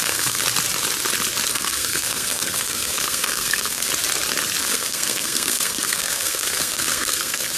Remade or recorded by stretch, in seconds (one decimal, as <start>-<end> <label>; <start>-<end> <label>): 0.0-0.4 remade; 0.4-1.5 recorded; 1.5-3.9 remade; 3.9-4.6 recorded; 4.6-7.6 remade